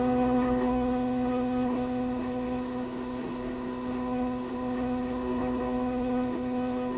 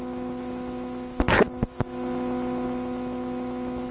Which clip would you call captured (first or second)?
second